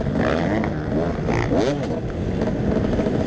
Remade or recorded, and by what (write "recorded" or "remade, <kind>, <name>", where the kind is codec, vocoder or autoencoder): recorded